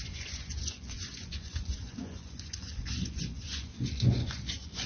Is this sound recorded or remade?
remade